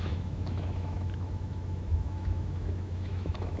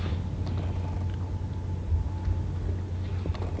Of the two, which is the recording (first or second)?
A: second